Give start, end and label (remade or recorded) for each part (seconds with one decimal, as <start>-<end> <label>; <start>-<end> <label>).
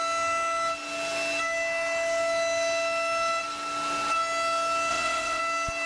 0.0-4.9 recorded; 4.9-5.4 remade; 5.4-5.9 recorded